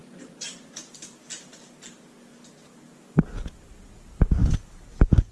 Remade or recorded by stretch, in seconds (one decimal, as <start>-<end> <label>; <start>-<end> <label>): 0.0-0.8 remade; 0.8-5.3 recorded